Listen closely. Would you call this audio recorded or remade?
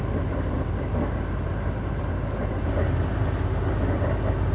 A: recorded